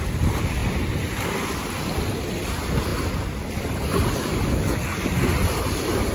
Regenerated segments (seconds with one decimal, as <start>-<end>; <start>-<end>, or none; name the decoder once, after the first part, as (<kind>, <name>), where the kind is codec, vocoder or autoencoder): 0.0-0.6 (vocoder, BigVGAN v2); 1.1-2.9; 5.6-6.1